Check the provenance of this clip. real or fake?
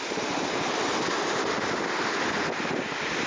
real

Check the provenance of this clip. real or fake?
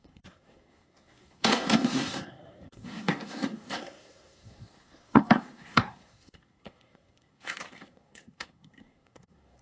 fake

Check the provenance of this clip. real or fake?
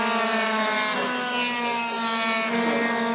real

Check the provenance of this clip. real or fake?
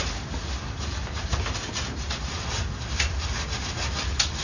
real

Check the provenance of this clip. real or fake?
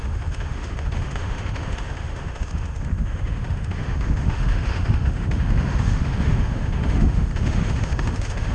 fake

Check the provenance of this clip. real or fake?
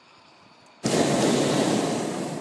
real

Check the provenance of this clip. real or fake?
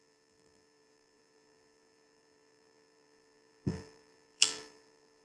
fake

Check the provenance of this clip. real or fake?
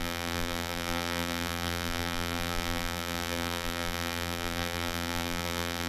fake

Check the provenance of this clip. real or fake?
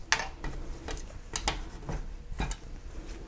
real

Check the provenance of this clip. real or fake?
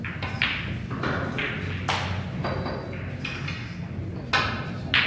real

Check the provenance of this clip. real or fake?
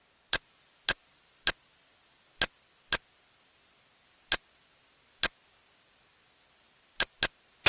real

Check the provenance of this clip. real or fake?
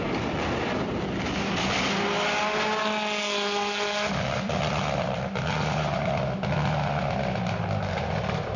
real